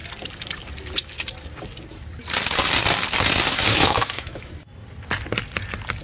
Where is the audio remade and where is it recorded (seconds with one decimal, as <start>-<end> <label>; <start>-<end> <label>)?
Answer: 0.0-3.7 recorded; 3.7-4.5 remade; 4.5-6.0 recorded